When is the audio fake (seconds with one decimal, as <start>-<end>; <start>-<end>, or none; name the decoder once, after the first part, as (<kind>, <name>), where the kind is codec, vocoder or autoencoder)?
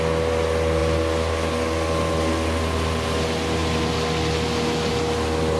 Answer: none